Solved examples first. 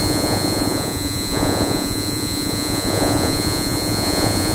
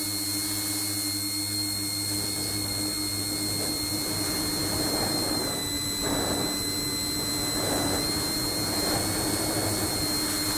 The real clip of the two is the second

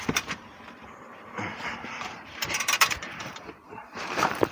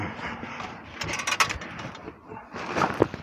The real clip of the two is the second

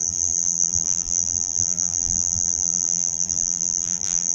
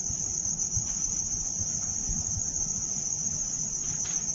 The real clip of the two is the second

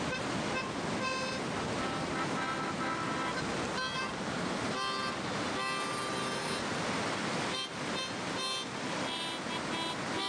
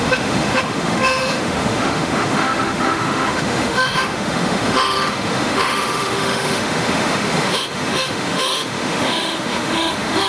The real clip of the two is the first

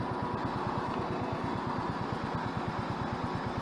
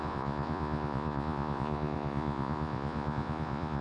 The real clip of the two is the first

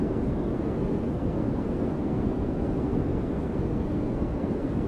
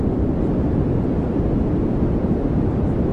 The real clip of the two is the second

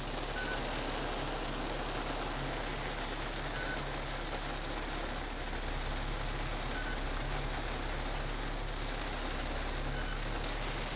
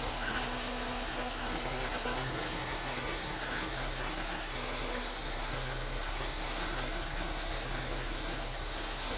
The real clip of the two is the first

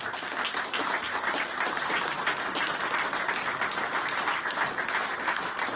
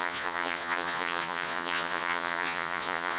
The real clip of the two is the first